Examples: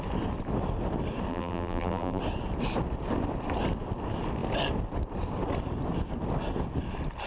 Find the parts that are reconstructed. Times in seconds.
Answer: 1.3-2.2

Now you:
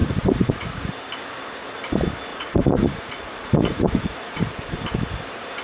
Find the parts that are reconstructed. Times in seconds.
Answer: 0.0-0.9; 2.3-4.8

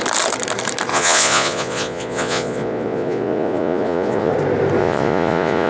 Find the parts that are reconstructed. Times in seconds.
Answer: 0.9-4.3; 4.8-5.7